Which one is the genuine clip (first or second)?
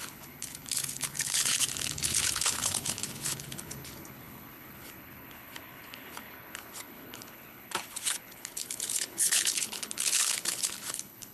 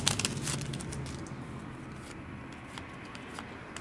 second